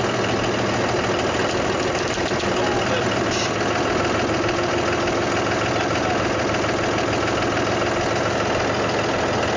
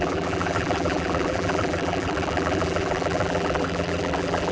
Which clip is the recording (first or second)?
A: first